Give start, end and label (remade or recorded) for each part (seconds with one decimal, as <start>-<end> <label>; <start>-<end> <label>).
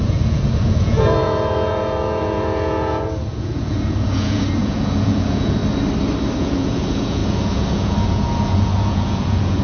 0.0-5.6 remade; 5.6-6.4 recorded; 6.4-9.6 remade